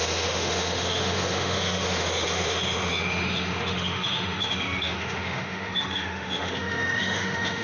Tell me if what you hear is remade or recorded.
remade